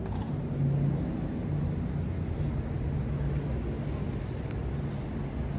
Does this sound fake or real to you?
real